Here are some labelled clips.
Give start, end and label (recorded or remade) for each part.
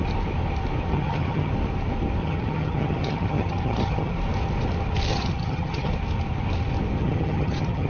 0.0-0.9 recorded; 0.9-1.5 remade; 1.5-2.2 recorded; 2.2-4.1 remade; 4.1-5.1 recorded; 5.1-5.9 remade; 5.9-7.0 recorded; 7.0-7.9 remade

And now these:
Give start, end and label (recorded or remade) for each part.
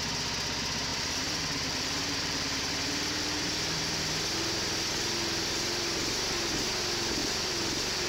0.0-0.9 recorded; 0.9-4.0 remade; 4.0-7.2 recorded; 7.2-8.1 remade